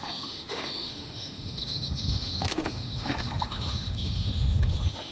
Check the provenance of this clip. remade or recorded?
remade